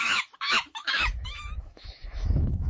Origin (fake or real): fake